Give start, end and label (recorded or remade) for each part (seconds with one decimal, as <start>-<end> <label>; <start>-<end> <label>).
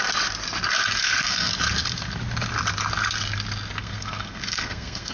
0.0-1.0 recorded; 1.0-1.5 remade; 1.5-3.8 recorded; 3.8-5.1 remade